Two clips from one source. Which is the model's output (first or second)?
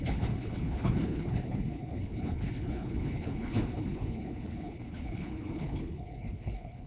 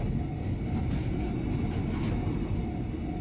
first